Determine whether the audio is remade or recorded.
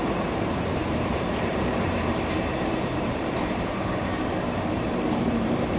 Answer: remade